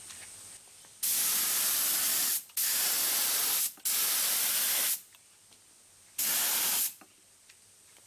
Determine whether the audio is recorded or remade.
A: recorded